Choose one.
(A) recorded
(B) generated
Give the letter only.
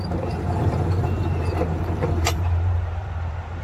B